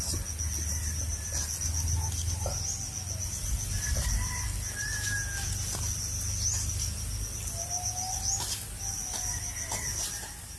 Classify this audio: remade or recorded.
recorded